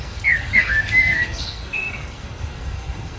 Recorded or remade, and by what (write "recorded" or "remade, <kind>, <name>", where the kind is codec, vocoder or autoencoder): remade, codec, SNAC